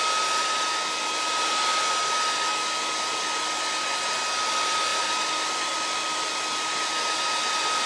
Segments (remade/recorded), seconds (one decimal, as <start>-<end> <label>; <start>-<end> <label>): 0.0-4.9 recorded; 4.9-6.3 remade; 6.3-7.9 recorded